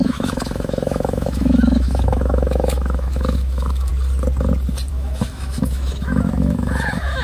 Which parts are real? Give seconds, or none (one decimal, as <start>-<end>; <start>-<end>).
3.9-4.9